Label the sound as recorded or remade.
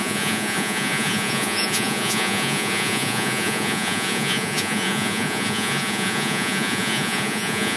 remade